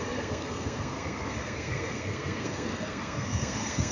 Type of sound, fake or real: fake